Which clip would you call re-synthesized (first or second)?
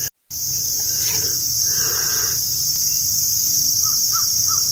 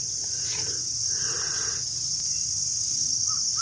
first